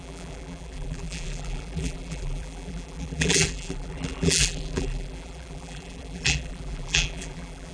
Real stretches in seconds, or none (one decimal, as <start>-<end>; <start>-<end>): none